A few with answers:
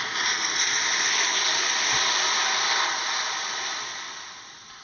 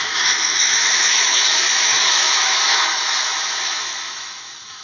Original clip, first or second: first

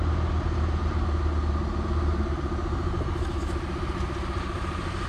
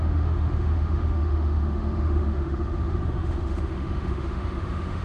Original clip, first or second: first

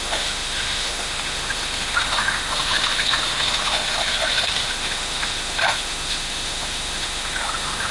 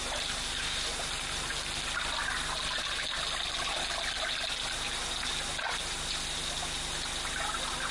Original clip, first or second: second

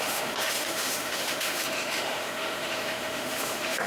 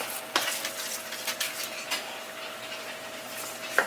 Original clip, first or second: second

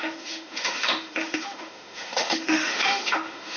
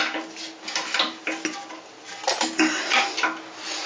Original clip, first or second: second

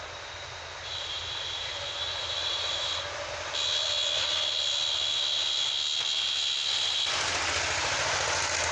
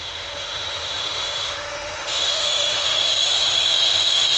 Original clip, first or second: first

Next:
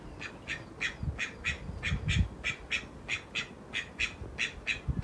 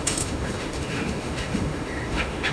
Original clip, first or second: first